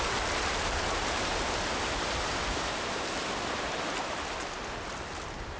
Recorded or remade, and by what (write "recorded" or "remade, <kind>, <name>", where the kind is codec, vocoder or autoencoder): recorded